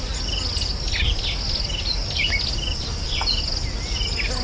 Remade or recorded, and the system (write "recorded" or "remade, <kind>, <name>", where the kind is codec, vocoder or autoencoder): recorded